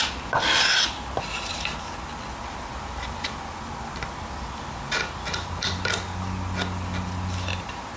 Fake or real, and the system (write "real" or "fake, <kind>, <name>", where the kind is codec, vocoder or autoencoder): real